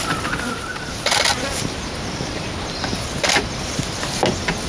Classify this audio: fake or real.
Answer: real